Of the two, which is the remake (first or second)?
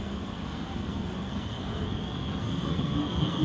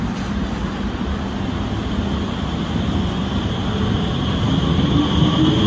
first